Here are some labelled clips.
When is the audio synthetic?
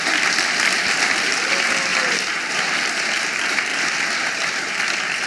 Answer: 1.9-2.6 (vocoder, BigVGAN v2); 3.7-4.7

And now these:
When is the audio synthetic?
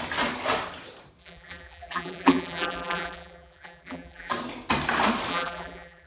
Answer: 1.2-4.3 (vocoder, BigVGAN v2); 5.3-6.1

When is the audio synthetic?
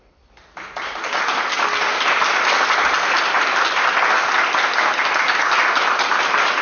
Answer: none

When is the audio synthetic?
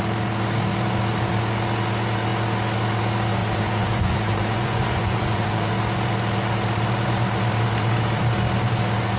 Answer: 3.4-5.7 (vocoder, Vocos)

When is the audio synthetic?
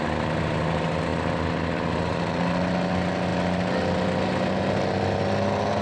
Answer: none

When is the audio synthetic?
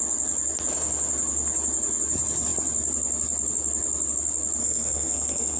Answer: 4.6-5.6 (codec, SNAC)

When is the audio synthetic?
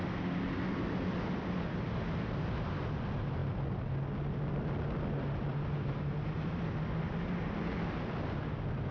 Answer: none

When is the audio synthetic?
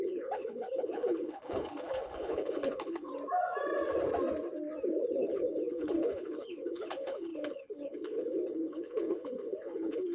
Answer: 0.0-3.1 (codec, HILCodec); 5.1-10.1